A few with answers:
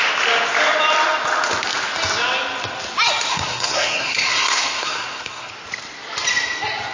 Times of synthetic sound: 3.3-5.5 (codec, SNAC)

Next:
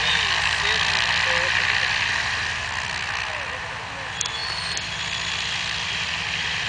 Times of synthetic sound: none

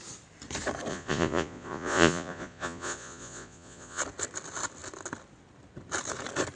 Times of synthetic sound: 0.9-4.0 (vocoder, Vocos)

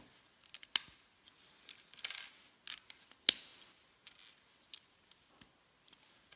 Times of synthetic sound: none

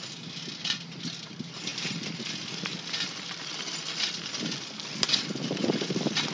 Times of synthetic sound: none

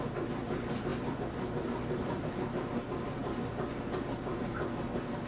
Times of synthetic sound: none